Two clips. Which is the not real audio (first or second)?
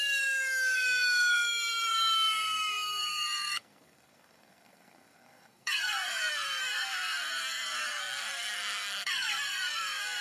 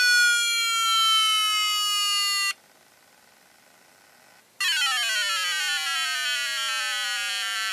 first